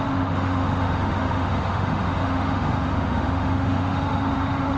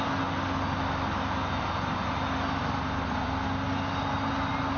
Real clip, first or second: second